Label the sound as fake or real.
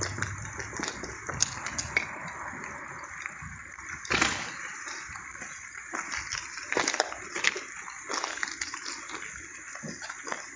real